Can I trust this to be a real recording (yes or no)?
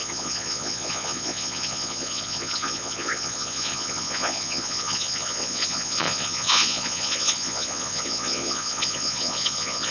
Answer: no